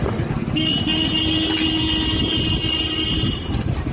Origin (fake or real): real